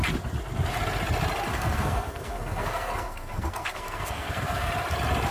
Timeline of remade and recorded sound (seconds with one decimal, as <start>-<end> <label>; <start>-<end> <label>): 0.0-1.5 recorded; 1.5-4.7 remade; 4.7-5.3 recorded